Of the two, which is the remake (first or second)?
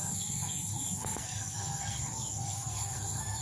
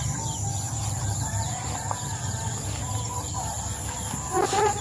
first